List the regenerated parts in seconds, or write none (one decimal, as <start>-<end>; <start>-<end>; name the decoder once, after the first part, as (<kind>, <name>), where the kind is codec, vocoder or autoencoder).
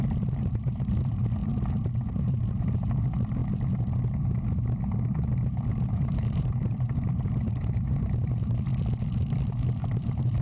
0.0-1.4 (vocoder, BigVGAN v2); 2.1-3.4; 5.9-8.7; 9.5-10.4